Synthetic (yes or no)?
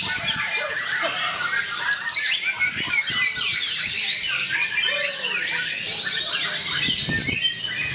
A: no